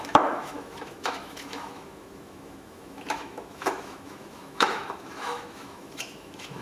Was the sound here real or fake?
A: fake